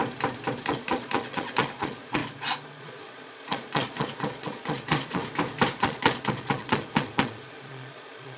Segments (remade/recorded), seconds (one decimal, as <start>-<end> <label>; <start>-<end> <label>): 0.0-0.6 recorded; 0.6-2.2 remade; 2.2-2.8 recorded; 2.8-5.2 remade; 5.2-5.8 recorded; 5.8-8.4 remade